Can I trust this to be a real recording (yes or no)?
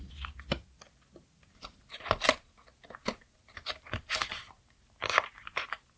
yes